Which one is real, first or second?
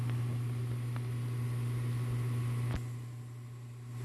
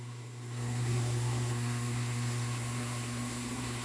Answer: first